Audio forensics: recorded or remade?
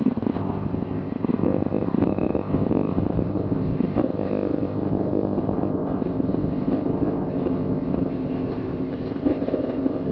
remade